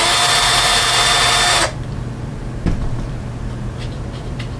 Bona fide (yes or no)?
yes